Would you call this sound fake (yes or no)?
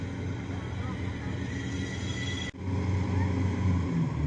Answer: no